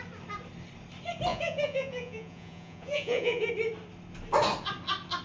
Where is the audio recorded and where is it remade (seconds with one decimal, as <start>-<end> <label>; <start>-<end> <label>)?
0.0-1.3 recorded; 1.3-3.5 remade; 3.5-5.2 recorded